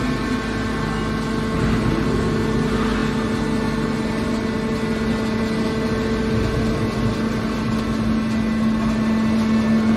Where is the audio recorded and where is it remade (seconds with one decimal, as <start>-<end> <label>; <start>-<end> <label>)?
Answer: 0.0-10.0 recorded